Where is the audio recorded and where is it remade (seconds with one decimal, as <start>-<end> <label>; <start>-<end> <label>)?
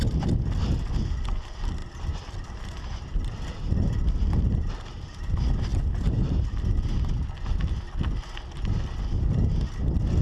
0.0-10.2 recorded